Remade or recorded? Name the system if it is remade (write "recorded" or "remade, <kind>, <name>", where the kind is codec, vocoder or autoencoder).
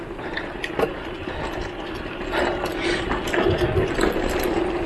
recorded